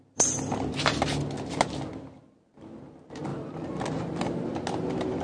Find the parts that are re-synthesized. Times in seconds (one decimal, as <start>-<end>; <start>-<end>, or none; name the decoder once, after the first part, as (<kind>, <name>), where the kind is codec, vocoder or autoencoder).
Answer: none